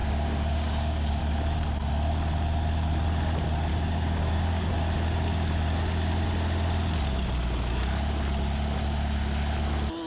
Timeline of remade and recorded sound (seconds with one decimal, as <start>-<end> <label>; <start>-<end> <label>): 0.0-1.2 remade; 1.2-3.7 recorded; 3.7-4.7 remade; 4.7-10.1 recorded